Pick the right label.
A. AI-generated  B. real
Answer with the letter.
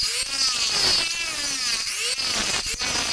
B